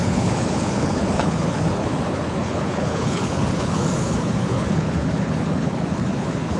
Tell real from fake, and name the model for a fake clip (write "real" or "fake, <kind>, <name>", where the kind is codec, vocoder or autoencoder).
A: fake, codec, HILCodec